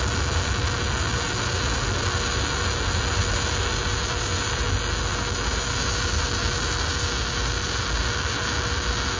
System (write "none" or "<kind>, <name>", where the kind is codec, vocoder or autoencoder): none